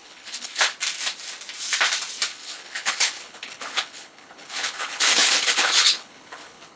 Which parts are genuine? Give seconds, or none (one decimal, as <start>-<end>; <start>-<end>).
0.7-2.3